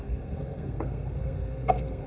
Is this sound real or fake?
fake